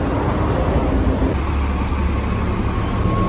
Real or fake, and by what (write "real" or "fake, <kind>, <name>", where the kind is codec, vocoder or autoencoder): real